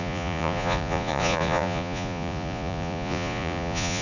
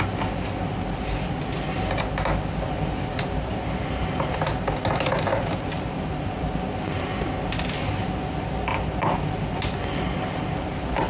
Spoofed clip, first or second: first